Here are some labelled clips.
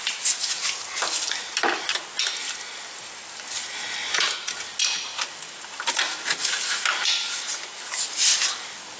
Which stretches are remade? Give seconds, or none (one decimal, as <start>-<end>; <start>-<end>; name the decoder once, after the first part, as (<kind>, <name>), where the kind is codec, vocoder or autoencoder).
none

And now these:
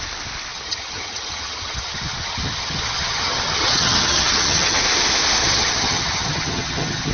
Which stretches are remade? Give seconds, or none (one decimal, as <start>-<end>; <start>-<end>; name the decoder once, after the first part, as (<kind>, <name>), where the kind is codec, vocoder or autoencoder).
0.5-4.8 (vocoder, HiFi-GAN); 5.4-7.1

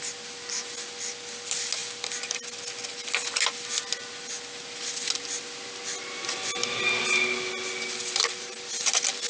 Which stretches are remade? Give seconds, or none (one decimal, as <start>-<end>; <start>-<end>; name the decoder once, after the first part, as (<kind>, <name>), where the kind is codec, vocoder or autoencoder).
none

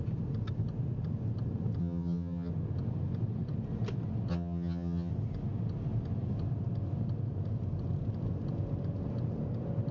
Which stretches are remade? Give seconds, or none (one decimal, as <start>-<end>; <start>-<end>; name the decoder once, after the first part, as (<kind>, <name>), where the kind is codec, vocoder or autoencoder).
1.8-2.5 (vocoder, HiFi-GAN); 4.3-5.1

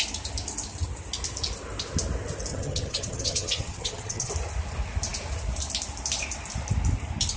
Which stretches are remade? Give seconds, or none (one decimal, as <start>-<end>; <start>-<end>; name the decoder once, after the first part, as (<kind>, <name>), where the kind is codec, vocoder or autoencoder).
2.5-4.3 (vocoder, HiFi-GAN)